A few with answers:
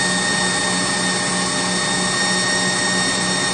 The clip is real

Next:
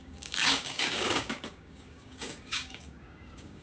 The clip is fake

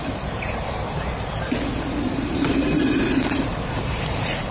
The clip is fake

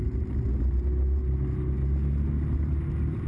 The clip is real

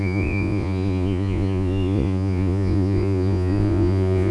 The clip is fake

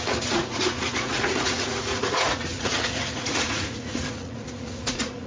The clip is fake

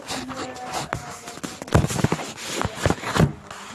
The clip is real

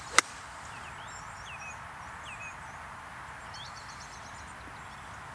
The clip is real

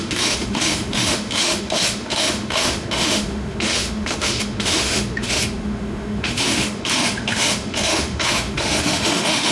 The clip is fake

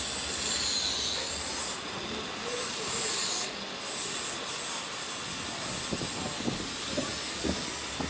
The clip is real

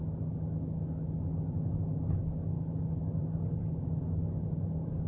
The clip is real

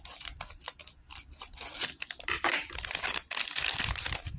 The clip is real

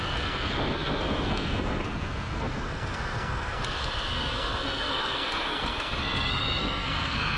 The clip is fake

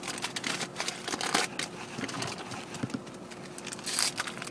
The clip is real